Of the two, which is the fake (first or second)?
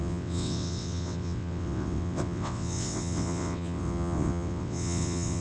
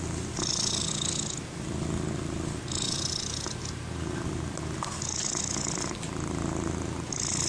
first